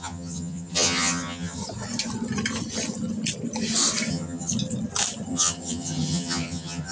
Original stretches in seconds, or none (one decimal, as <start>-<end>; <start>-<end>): 1.6-4.1; 4.5-5.3